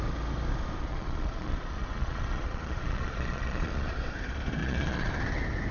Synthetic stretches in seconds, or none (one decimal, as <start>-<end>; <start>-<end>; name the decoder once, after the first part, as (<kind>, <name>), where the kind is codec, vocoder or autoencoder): 0.8-4.0 (vocoder, Vocos); 4.6-5.1